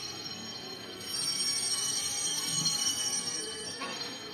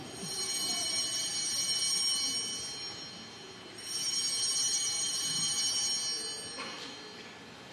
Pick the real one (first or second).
second